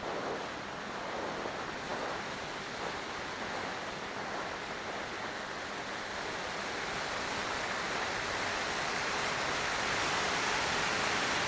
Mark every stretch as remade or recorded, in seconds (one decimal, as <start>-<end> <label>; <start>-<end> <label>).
0.0-11.5 recorded